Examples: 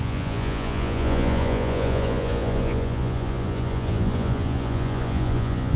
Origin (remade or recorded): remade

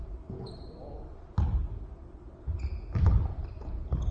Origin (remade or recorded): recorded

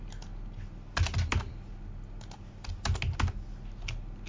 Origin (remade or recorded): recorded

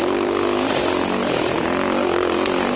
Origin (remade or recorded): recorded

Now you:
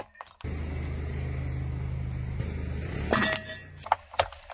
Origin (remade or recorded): recorded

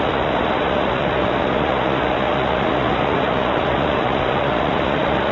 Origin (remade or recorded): remade